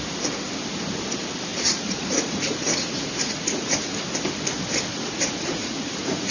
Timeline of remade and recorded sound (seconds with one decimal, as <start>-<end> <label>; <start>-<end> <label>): 0.0-1.5 recorded; 1.5-3.9 remade; 3.9-4.9 recorded; 4.9-6.3 remade